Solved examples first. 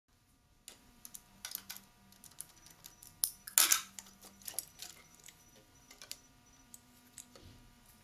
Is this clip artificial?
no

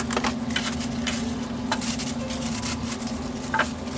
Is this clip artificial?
no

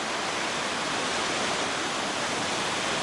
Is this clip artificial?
no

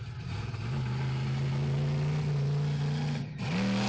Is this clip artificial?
no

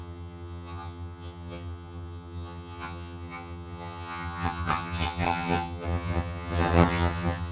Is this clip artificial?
yes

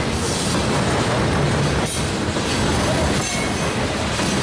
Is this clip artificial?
no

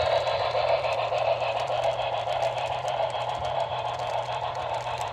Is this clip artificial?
yes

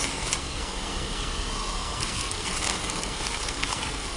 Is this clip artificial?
yes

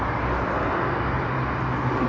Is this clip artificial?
no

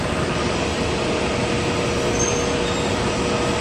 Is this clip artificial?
no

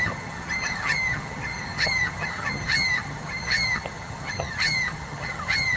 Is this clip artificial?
yes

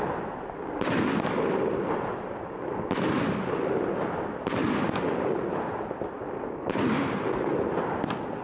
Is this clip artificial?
no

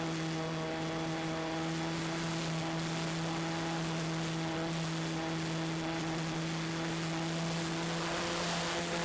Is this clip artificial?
no